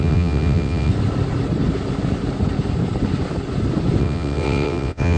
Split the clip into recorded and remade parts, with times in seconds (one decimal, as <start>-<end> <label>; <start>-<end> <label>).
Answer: 0.0-0.9 remade; 0.9-4.0 recorded; 4.0-5.2 remade